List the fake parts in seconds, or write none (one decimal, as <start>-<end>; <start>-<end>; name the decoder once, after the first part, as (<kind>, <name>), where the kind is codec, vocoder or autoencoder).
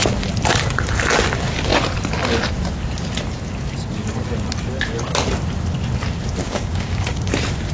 6.4-7.3 (codec, DAC)